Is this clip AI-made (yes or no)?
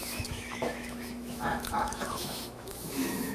yes